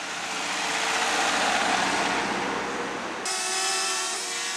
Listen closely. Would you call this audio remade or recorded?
recorded